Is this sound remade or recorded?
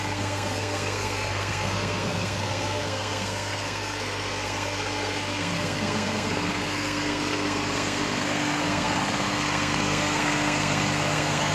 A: remade